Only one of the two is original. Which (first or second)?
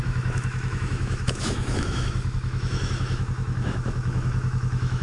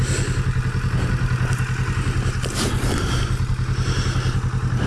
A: second